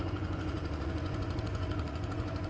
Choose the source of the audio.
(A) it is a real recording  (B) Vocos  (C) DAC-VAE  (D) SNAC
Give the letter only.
B